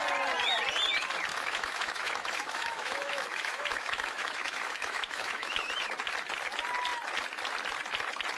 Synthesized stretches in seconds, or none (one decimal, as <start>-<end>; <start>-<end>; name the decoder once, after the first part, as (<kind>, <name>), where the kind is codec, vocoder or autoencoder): 1.3-5.7 (autoencoder, DAC-VAE)